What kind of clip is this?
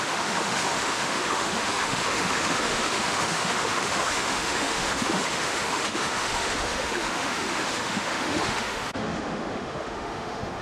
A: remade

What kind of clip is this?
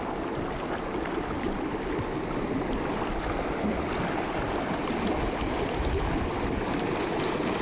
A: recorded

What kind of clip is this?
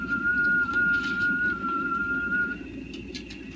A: recorded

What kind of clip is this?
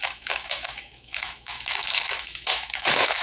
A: remade